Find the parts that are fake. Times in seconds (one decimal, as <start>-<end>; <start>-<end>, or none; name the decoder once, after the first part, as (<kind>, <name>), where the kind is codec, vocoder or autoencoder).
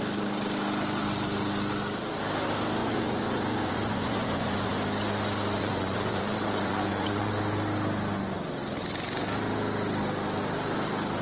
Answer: 2.8-4.7 (vocoder, Vocos); 5.6-7.3